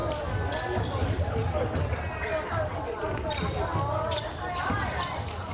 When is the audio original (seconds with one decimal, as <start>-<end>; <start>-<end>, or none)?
0.0-5.5